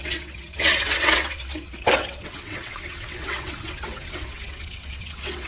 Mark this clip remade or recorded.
remade